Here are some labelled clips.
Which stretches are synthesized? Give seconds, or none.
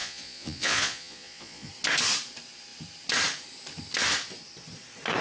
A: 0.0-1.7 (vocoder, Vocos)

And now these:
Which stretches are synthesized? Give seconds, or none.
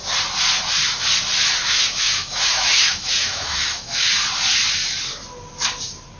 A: 1.6-4.1 (autoencoder, DAC-VAE)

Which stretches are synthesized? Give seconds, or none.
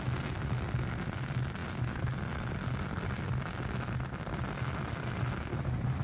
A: none